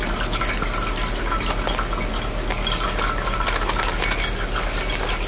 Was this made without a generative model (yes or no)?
yes